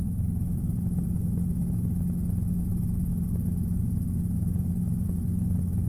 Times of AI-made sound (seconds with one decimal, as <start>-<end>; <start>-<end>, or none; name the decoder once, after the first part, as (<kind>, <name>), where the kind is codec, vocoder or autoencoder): none